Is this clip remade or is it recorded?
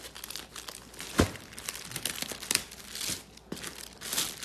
recorded